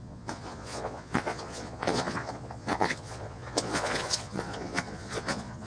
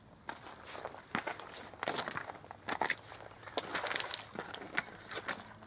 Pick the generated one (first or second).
first